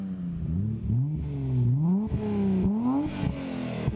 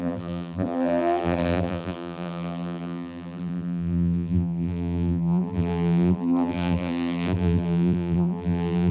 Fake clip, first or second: second